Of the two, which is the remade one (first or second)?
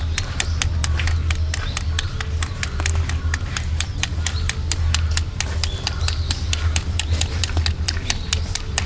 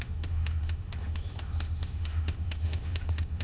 second